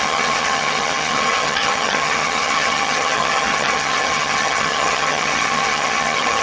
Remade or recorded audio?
remade